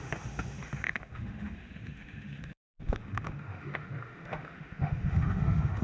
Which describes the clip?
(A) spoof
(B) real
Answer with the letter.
A